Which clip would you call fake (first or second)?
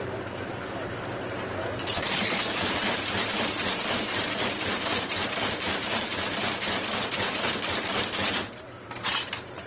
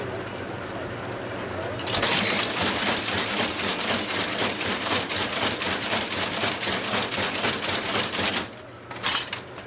first